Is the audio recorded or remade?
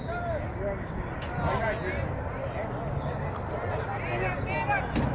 recorded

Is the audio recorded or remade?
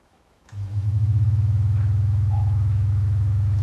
remade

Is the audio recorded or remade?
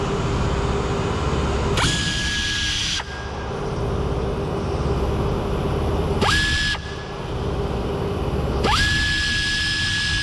recorded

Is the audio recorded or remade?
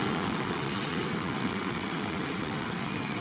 remade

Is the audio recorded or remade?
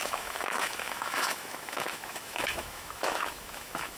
remade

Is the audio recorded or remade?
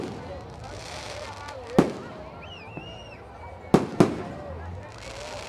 recorded